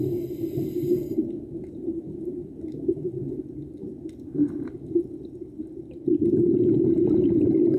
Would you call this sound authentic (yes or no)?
no